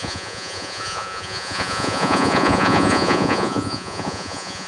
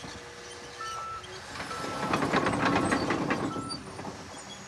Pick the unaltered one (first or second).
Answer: second